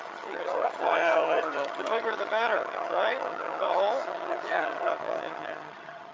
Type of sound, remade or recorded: remade